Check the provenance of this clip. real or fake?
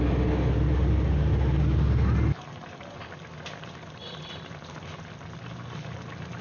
real